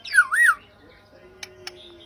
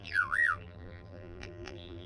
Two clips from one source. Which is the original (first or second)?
first